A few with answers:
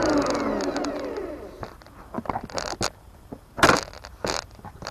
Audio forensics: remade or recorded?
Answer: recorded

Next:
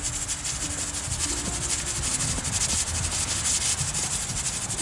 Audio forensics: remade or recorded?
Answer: recorded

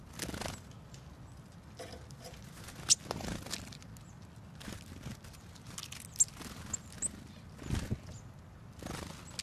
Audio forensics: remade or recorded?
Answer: recorded